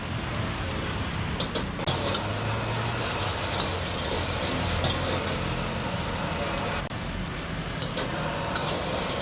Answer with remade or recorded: recorded